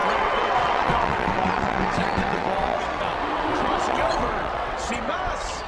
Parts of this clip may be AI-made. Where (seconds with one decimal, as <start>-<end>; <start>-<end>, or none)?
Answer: 0.0-5.7